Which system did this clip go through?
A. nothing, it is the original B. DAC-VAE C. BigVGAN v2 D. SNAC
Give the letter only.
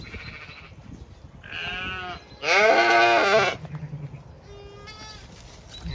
A